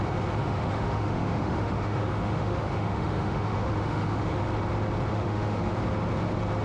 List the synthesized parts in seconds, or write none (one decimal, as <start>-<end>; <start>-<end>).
0.4-4.4; 5.1-5.7